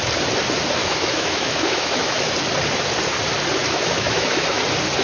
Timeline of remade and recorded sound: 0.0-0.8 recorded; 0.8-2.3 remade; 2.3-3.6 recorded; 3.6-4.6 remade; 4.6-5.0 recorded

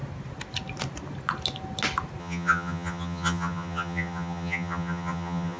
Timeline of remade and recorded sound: 0.0-2.2 recorded; 2.2-5.6 remade

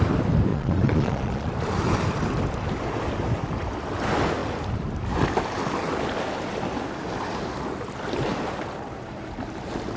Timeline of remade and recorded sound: 0.0-0.5 recorded; 0.5-1.5 remade; 1.5-10.0 recorded

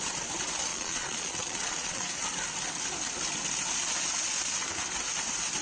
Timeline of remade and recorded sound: 0.0-0.7 recorded; 0.7-2.1 remade; 2.1-5.6 recorded